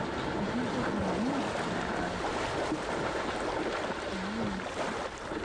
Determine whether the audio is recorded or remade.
recorded